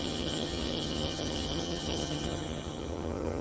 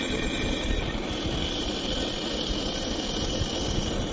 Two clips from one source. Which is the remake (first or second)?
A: first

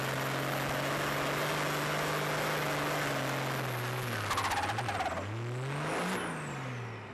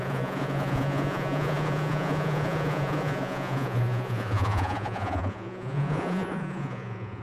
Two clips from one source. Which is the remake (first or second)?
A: second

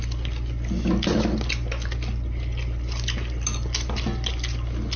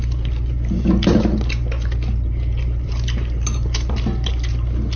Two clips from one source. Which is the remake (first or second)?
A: second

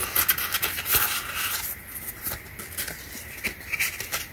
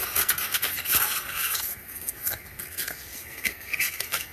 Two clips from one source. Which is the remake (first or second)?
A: second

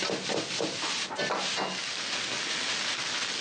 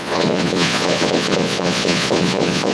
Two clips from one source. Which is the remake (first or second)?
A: second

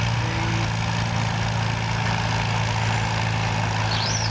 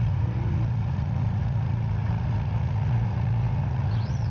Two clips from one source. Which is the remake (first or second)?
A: second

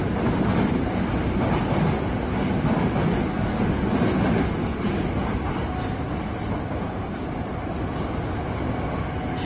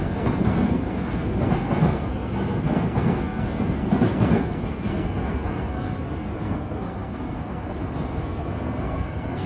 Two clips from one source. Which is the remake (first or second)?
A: second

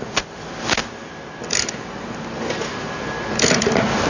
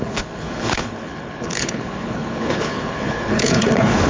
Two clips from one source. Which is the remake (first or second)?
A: second